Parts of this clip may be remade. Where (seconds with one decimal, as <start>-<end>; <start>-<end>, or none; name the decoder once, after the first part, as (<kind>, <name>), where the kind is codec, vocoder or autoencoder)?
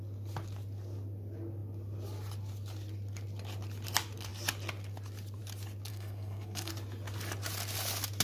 5.9-6.7 (codec, SNAC)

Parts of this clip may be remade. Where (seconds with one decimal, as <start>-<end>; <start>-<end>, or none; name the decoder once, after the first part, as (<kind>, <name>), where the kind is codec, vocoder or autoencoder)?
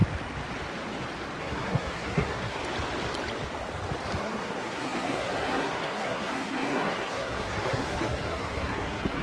1.4-2.6 (codec, SNAC); 4.2-9.2